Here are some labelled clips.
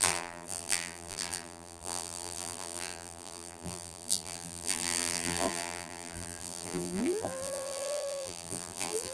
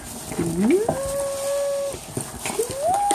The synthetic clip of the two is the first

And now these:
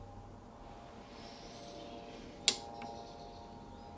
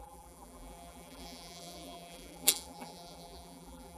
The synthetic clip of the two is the second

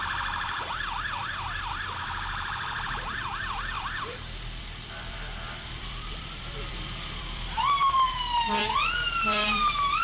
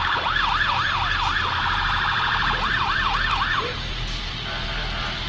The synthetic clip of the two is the first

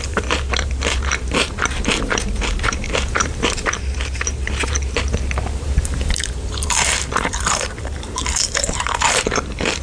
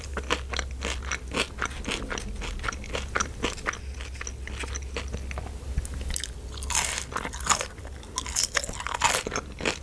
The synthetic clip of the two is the first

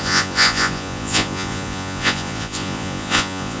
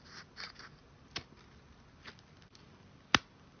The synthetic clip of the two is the first